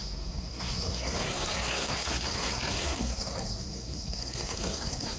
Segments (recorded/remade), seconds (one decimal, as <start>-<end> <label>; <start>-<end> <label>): 0.0-5.2 remade